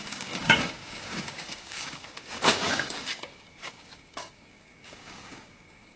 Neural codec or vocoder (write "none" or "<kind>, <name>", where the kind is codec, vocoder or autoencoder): codec, DAC